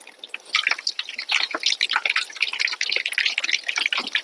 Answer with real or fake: real